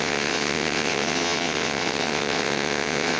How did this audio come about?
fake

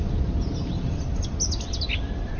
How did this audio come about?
real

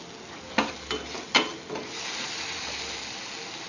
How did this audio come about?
real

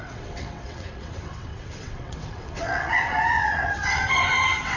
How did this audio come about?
fake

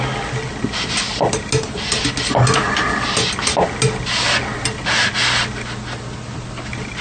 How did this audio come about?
real